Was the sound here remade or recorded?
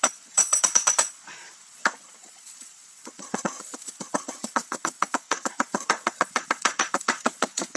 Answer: remade